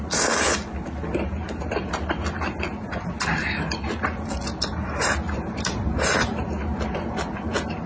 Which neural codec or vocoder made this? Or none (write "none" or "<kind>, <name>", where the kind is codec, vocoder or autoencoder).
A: none